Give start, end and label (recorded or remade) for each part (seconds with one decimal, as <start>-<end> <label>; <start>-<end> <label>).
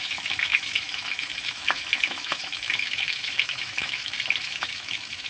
0.0-5.3 remade